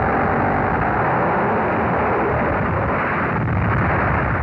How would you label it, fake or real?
real